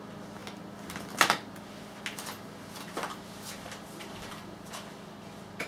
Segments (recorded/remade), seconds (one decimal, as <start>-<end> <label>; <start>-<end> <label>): 0.0-5.7 recorded